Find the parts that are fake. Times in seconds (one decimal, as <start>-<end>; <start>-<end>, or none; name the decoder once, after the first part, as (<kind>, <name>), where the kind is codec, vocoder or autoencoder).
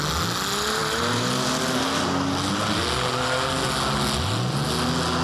none